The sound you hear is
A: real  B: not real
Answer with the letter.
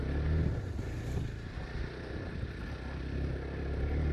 A